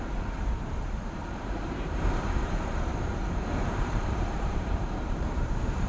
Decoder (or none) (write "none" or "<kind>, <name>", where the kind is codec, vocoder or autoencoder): vocoder, BigVGAN v2